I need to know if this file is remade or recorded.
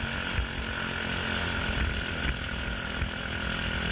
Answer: recorded